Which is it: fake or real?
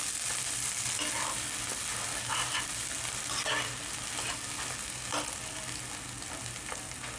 real